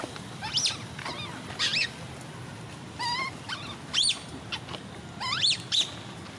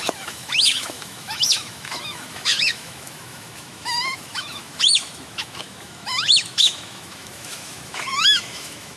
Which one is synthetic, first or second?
second